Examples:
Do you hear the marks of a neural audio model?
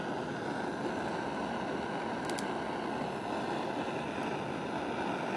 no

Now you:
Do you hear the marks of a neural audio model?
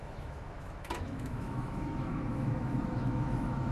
yes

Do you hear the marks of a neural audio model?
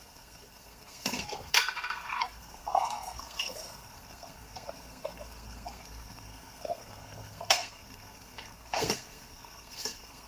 yes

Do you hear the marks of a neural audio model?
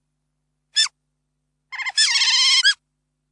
no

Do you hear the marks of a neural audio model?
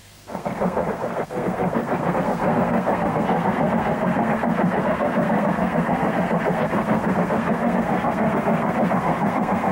yes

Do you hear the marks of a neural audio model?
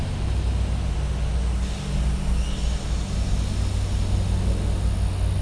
no